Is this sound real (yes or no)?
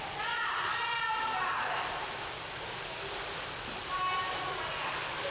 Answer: yes